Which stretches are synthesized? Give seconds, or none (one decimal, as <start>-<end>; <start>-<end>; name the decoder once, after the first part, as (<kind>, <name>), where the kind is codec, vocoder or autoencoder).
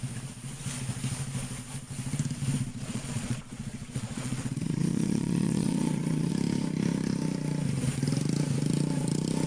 2.7-6.3 (vocoder, Vocos)